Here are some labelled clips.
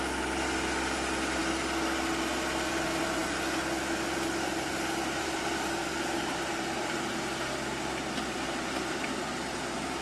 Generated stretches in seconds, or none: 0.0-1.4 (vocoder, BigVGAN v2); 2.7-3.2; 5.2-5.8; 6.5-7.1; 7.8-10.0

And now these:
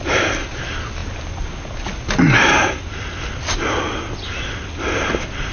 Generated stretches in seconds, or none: none

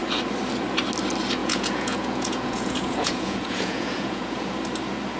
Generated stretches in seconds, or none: 1.4-4.5 (vocoder, Vocos)